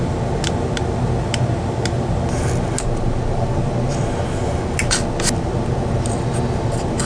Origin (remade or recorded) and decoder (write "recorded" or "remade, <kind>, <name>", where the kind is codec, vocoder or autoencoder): recorded